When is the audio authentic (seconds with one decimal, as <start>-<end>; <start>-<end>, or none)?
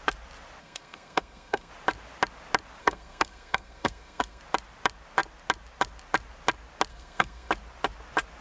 0.0-0.6; 1.7-2.8; 4.4-6.9; 7.5-8.4